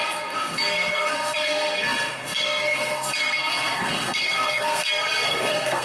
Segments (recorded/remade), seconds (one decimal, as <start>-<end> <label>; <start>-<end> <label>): 0.0-5.8 remade